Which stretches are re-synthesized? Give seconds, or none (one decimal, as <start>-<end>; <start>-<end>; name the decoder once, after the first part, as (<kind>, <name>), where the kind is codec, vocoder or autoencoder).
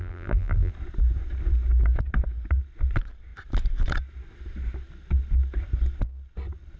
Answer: 0.0-0.7 (vocoder, BigVGAN v2)